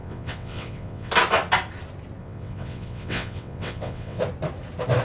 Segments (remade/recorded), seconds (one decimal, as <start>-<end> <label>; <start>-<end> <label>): 0.0-1.1 remade; 1.1-2.2 recorded; 2.2-4.2 remade; 4.2-5.0 recorded